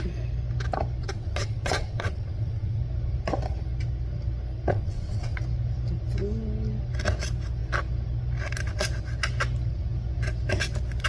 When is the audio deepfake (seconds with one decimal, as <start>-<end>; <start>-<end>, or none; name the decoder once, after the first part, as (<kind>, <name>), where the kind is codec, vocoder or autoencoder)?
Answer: 1.0-2.8 (vocoder, WaveNeXt); 4.7-5.4